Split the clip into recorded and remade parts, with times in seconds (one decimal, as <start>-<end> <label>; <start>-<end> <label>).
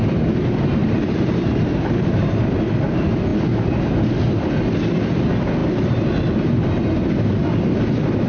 0.0-0.8 recorded; 0.8-2.4 remade; 2.4-8.3 recorded